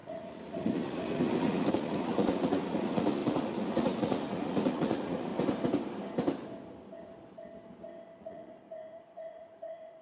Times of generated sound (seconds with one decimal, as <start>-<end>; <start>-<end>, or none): 0.0-5.3; 8.2-10.0

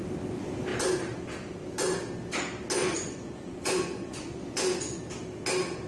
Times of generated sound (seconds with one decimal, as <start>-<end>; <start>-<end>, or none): 2.8-5.0

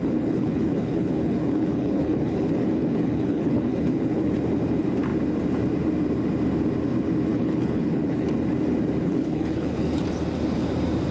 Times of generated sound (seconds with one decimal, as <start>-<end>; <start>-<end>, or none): 0.0-4.3; 7.3-8.3; 9.0-10.0

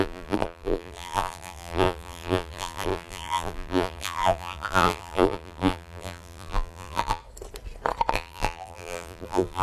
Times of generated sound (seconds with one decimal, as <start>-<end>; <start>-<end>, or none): 0.0-7.2; 8.1-9.6